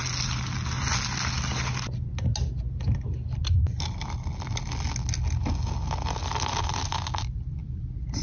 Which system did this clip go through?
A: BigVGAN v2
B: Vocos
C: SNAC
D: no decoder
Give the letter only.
D